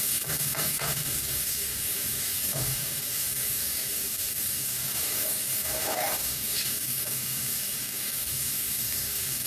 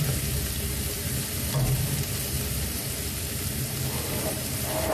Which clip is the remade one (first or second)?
first